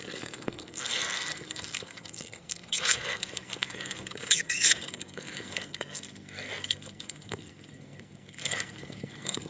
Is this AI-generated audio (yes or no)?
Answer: yes